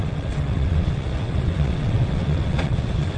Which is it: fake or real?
fake